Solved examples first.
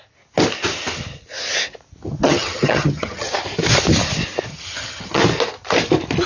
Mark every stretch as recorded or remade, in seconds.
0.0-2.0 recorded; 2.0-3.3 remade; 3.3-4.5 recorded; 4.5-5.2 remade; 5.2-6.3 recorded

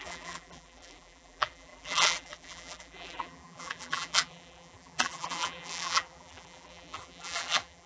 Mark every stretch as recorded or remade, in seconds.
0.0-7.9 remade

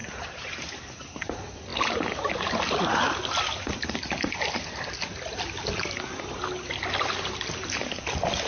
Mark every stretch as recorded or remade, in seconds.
0.0-0.6 remade; 0.6-1.7 recorded; 1.7-2.6 remade; 2.6-8.5 recorded

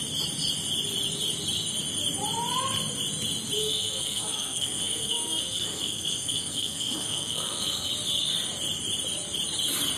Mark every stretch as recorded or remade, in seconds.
0.0-3.6 recorded; 3.6-7.9 remade; 7.9-10.0 recorded

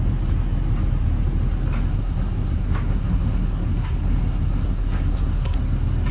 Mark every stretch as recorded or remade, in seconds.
0.0-1.9 recorded; 1.9-5.6 remade; 5.6-6.1 recorded

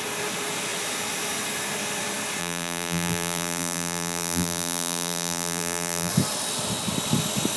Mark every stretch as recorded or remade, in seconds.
0.0-2.4 recorded; 2.4-6.1 remade; 6.1-7.6 recorded

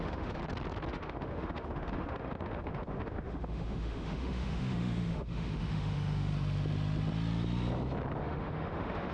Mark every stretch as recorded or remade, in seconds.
0.0-0.4 remade; 0.4-0.9 recorded; 0.9-6.3 remade; 6.3-8.2 recorded; 8.2-9.1 remade

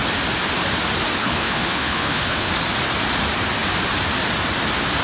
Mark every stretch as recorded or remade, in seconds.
0.0-1.2 recorded; 1.2-2.5 remade; 2.5-5.0 recorded